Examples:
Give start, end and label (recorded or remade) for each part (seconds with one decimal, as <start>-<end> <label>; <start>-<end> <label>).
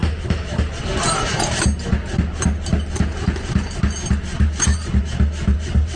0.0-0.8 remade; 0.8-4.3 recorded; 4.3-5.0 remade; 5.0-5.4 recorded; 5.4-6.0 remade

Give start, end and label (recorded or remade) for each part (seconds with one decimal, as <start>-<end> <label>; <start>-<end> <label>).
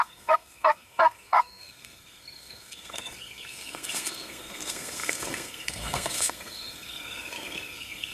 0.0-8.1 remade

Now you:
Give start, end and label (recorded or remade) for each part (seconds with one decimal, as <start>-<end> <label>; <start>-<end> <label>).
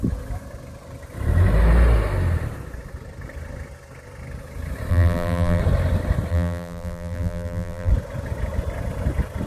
0.0-4.9 recorded; 4.9-5.6 remade; 5.6-6.3 recorded; 6.3-7.9 remade; 7.9-9.5 recorded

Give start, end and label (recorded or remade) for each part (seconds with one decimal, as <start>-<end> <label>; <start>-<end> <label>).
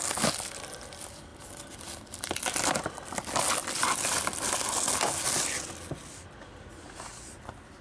0.0-7.8 recorded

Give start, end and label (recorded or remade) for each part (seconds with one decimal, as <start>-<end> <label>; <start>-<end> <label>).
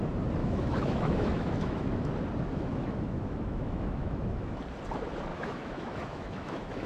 0.0-0.4 recorded; 0.4-2.1 remade; 2.1-2.5 recorded; 2.5-4.6 remade; 4.6-5.3 recorded; 5.3-6.9 remade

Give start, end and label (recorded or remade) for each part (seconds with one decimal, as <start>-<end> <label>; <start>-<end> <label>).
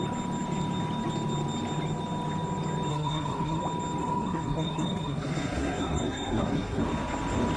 0.0-2.9 recorded; 2.9-3.6 remade; 3.6-4.0 recorded; 4.0-6.8 remade; 6.8-7.6 recorded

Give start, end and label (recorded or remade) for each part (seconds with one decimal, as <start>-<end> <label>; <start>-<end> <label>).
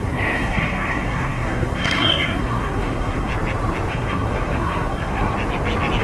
0.0-3.3 remade; 3.3-3.9 recorded; 3.9-5.3 remade; 5.3-6.0 recorded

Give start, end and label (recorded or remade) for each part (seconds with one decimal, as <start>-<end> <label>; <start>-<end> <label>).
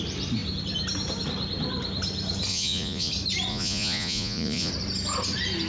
0.0-2.5 recorded; 2.5-3.1 remade; 3.1-3.5 recorded; 3.5-4.7 remade; 4.7-5.7 recorded